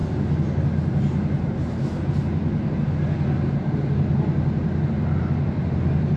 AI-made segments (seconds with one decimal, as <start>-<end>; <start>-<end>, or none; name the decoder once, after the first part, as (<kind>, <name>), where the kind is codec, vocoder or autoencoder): none